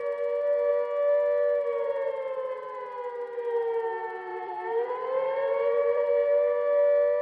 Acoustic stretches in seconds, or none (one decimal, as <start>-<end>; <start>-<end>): 0.0-4.3; 6.1-7.2